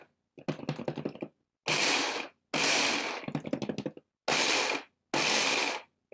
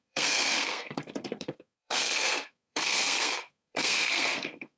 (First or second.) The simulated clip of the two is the second